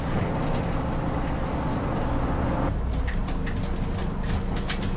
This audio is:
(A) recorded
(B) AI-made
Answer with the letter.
A